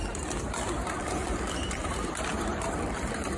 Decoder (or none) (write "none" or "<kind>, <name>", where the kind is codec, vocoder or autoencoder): vocoder, BigVGAN v2